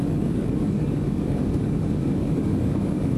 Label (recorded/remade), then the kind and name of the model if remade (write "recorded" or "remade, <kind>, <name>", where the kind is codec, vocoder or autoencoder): remade, codec, DAC